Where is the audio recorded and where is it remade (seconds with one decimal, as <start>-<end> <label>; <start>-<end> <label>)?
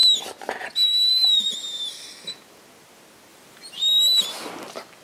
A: 0.0-3.3 recorded; 3.3-3.9 remade; 3.9-5.0 recorded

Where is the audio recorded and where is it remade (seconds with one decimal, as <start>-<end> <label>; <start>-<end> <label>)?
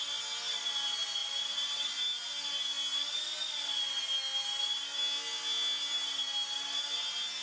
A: 0.0-1.2 recorded; 1.2-2.3 remade; 2.3-7.4 recorded